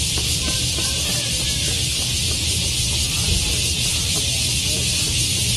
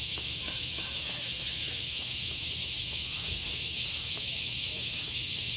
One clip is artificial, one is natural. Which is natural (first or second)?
first